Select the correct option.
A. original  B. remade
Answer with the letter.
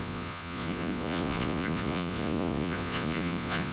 B